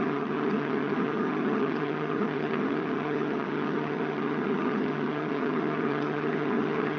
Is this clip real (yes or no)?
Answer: no